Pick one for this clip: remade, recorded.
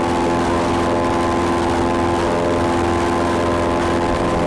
recorded